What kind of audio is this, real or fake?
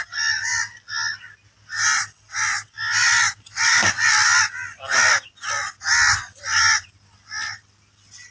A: real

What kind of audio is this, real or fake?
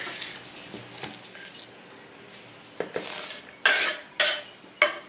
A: real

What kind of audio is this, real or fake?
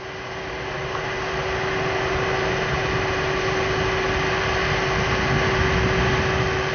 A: real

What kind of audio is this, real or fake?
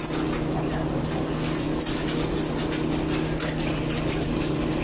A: real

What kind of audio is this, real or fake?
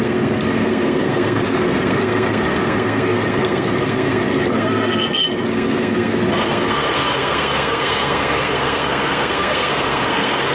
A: fake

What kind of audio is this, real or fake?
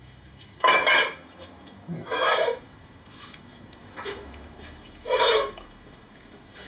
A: fake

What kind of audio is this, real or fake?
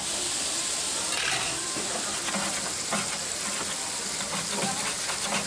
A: real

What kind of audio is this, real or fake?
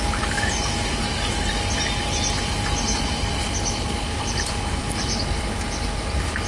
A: real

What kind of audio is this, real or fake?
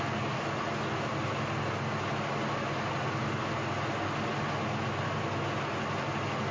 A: real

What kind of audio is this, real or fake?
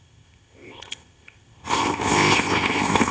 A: fake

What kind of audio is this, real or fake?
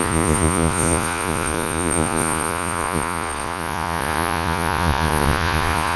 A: fake